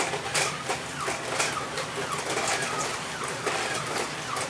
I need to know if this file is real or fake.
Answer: real